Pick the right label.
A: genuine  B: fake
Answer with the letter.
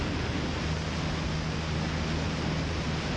A